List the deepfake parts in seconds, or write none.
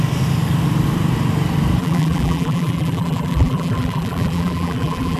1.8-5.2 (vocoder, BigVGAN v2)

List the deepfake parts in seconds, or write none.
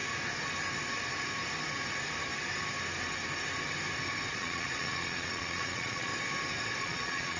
4.3-6.1 (vocoder, Vocos); 6.8-7.4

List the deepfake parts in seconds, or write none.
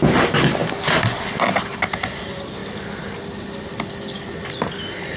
none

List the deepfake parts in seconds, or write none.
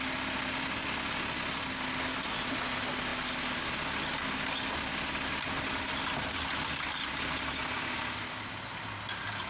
none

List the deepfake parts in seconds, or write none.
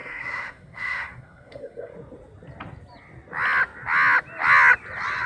0.0-1.9 (codec, SNAC)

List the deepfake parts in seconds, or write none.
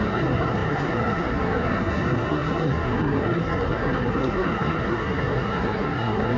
0.0-6.4 (codec, SNAC)